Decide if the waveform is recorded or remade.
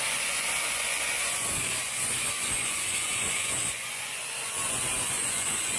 remade